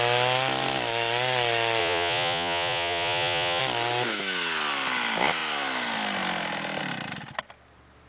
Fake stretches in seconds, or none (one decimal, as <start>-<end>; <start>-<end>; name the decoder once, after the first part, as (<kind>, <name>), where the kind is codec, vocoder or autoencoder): 1.8-3.6 (vocoder, Vocos)

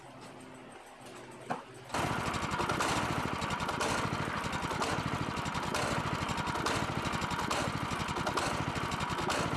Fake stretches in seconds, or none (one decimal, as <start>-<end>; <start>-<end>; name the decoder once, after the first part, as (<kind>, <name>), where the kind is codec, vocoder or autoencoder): none

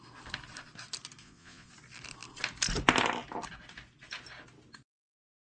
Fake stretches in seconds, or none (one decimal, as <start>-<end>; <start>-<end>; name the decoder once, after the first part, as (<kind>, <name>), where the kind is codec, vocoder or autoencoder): 1.2-1.7 (vocoder, Vocos)

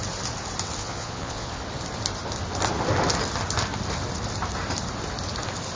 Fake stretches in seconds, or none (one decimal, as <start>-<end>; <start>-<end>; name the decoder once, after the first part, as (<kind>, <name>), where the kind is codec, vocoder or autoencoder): 0.8-1.5 (vocoder, Vocos)

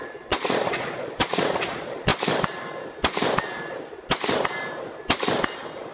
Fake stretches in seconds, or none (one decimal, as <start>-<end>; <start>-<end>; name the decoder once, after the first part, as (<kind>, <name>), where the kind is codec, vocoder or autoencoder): 0.0-2.1 (vocoder, Vocos)

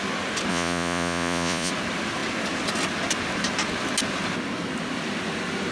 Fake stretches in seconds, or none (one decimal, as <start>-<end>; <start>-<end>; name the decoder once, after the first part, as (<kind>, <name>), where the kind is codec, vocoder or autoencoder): 0.5-1.7 (vocoder, Vocos)

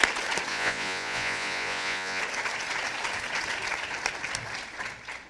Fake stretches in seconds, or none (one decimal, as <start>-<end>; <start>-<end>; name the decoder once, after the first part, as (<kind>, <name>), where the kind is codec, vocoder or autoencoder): 0.5-2.2 (vocoder, Vocos)

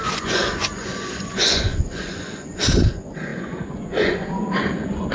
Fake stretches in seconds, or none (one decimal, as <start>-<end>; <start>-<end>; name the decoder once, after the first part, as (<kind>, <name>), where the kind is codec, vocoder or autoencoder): 0.0-5.1 (vocoder, Vocos)